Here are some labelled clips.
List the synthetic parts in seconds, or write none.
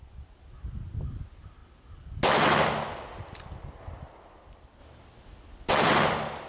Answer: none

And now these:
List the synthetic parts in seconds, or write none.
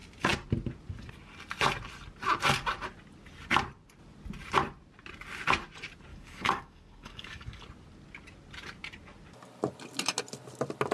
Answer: 6.1-7.6 (codec, DAC)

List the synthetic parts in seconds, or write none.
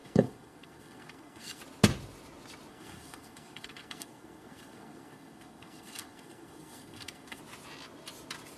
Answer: 0.0-1.6 (codec, SNAC); 2.7-7.4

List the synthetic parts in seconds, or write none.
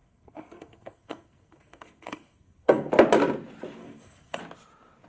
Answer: 0.0-2.9 (codec, SNAC); 3.8-4.4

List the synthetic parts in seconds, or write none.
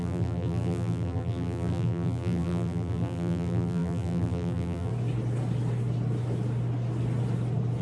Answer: 0.0-4.9 (vocoder, BigVGAN v2)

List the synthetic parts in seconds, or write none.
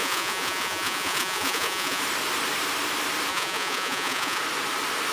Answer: 0.0-2.0 (vocoder, Vocos); 3.3-4.4